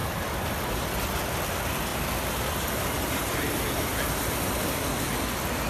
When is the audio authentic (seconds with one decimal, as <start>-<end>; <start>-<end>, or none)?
0.0-5.7